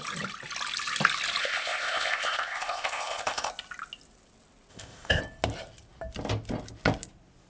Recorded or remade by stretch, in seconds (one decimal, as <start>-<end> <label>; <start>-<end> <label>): 0.0-1.4 recorded; 1.4-3.5 remade; 3.5-4.7 recorded; 4.7-5.2 remade; 5.2-7.5 recorded